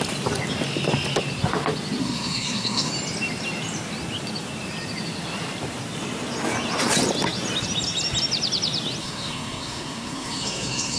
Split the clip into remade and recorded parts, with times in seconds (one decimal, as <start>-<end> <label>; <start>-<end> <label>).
0.0-2.0 recorded; 2.0-2.9 remade; 2.9-9.0 recorded; 9.0-11.0 remade